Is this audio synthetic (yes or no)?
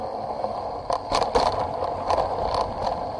no